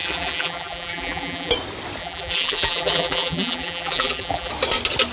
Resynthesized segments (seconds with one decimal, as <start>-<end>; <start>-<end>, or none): 0.0-1.5; 2.0-4.5